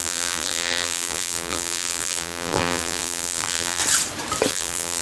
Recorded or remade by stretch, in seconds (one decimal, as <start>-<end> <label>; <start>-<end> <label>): 0.0-3.8 remade; 3.8-4.5 recorded; 4.5-5.0 remade